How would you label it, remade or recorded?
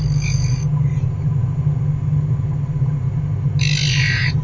recorded